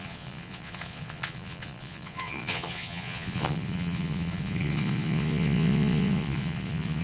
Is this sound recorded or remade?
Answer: remade